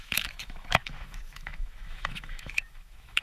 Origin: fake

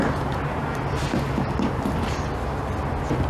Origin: real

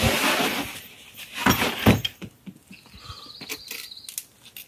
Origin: real